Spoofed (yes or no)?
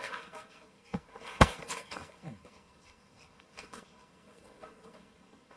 yes